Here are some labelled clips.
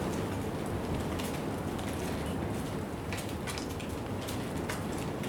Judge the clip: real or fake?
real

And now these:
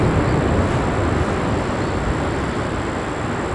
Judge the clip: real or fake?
real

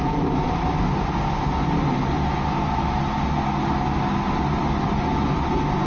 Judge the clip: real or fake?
real